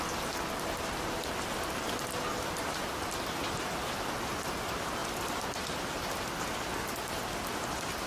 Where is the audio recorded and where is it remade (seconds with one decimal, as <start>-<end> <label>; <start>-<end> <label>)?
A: 0.0-8.1 recorded